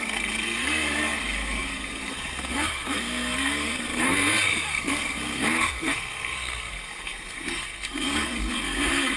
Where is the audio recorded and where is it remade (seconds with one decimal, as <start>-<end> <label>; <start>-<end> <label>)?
0.0-9.2 remade